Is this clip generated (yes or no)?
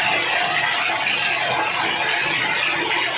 no